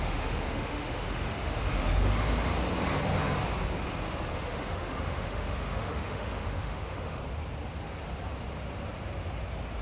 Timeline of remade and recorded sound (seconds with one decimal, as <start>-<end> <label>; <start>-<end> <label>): 0.0-2.1 remade; 2.1-4.3 recorded; 4.3-7.2 remade; 7.2-9.8 recorded